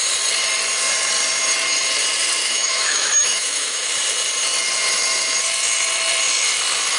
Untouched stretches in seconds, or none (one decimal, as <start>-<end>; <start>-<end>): 0.0-2.4; 3.9-7.0